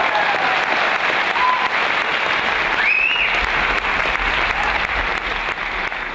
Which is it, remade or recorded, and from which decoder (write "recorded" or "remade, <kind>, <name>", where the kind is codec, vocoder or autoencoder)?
recorded